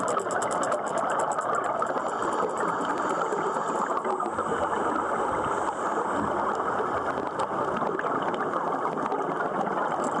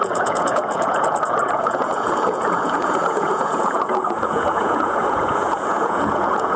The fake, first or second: second